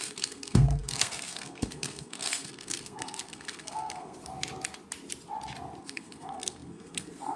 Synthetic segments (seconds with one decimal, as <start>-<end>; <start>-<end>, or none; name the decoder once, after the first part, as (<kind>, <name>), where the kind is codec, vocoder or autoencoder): 0.0-4.2 (codec, SNAC); 5.8-7.4